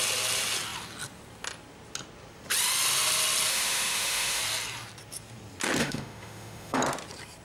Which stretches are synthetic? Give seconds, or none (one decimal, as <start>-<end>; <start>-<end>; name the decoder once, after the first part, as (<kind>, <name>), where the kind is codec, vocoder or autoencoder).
3.5-4.4 (autoencoder, DAC-VAE); 5.8-6.8